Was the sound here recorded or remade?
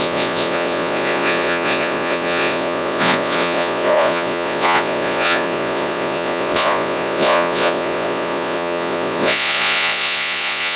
remade